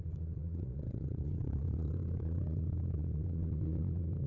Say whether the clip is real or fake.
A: fake